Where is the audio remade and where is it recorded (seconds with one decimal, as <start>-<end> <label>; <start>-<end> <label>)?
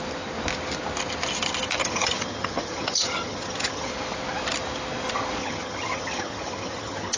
0.0-1.8 recorded; 1.8-3.9 remade; 3.9-5.4 recorded; 5.4-7.2 remade